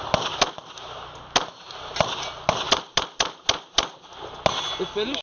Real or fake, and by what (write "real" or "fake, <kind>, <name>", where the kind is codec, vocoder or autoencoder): real